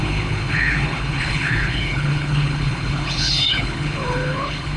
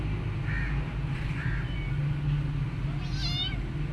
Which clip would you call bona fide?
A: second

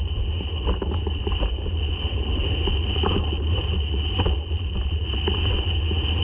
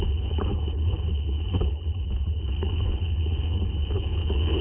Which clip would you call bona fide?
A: first